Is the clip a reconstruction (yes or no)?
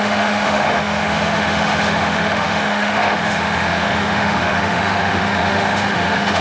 yes